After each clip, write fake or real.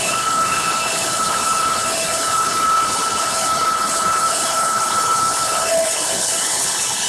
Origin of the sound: fake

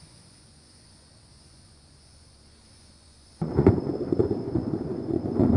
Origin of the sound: fake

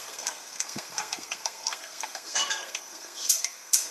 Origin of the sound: fake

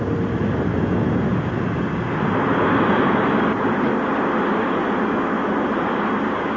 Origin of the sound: real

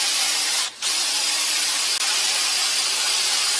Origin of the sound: real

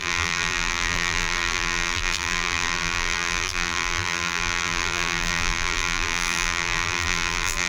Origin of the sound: fake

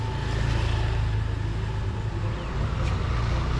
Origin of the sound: real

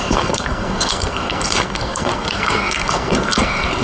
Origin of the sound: fake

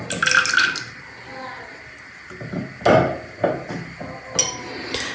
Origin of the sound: real